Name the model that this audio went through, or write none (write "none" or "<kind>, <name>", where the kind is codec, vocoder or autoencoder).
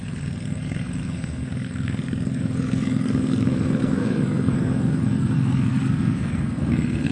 codec, SNAC